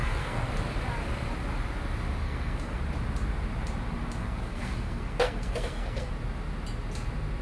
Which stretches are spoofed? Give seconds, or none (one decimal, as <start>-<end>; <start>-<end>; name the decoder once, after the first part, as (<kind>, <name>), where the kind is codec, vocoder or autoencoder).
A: 0.0-0.5 (codec, SNAC); 2.2-2.8; 4.2-6.1